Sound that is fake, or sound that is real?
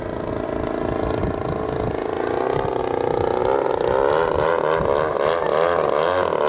real